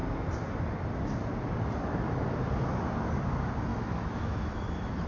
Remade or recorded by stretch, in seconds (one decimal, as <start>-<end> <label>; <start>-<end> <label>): 0.0-3.7 recorded; 3.7-5.1 remade